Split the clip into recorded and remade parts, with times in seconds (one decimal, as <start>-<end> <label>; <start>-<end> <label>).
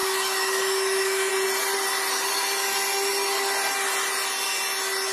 0.0-1.3 remade; 1.3-5.1 recorded